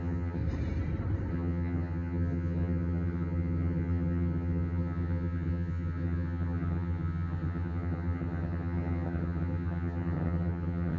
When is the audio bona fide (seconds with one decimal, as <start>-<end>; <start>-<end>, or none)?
0.4-1.3

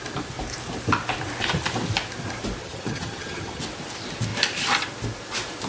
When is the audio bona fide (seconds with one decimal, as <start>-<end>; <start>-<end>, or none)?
0.0-2.6; 3.6-5.7